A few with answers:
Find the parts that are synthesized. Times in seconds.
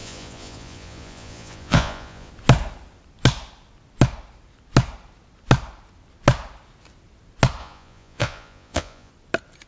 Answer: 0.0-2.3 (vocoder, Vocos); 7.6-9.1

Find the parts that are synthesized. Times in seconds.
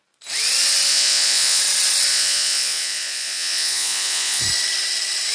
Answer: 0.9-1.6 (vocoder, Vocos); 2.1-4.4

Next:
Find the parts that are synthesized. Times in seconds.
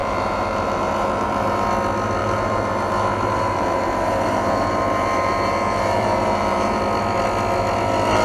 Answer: 0.0-1.7 (vocoder, BigVGAN v2); 2.2-6.8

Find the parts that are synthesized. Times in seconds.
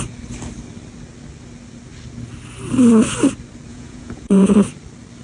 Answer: 3.7-4.5 (vocoder, Vocos)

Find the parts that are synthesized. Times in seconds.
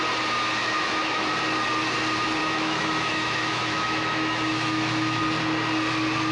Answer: 0.6-1.3 (autoencoder, DAC-VAE); 2.4-5.2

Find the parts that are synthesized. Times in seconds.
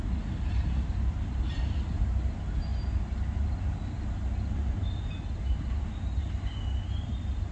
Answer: none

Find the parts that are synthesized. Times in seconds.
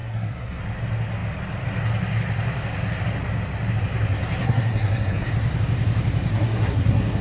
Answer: 0.0-0.6 (codec, SNAC); 4.4-5.3; 6.3-7.2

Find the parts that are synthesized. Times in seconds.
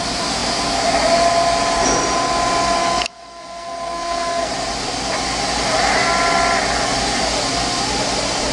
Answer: 2.8-4.5 (codec, SNAC)